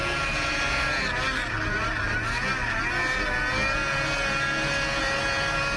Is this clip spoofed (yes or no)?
no